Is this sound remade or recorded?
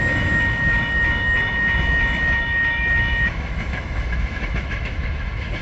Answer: remade